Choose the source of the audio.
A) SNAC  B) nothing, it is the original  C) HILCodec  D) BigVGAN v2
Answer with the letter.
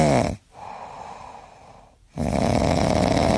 B